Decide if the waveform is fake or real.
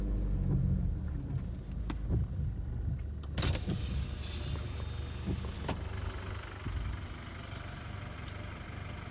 real